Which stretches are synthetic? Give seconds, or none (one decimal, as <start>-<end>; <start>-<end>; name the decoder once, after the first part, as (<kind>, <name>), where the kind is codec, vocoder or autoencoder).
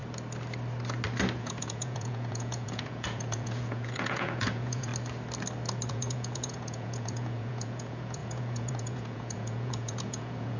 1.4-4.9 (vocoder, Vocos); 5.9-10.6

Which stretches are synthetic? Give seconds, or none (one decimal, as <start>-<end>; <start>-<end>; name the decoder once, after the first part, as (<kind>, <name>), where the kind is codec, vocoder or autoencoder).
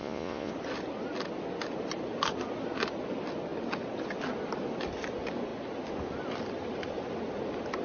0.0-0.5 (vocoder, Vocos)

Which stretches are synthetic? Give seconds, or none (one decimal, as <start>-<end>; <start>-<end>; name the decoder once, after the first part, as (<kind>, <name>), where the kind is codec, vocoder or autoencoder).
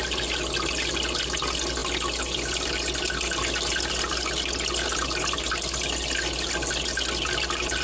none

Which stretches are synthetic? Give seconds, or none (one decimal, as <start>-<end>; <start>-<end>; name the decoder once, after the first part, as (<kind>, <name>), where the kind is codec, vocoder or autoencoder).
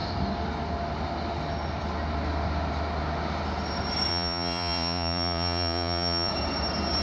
4.1-6.3 (vocoder, Vocos)